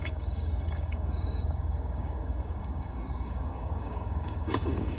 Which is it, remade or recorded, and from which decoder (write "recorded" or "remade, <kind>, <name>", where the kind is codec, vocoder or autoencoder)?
remade, codec, DAC